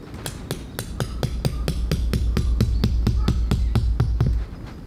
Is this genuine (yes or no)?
yes